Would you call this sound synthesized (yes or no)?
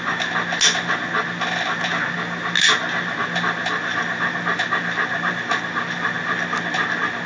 no